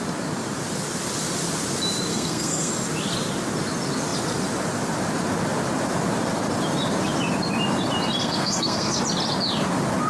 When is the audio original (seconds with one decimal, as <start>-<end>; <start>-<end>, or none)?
0.0-2.1; 2.7-8.2; 9.0-10.1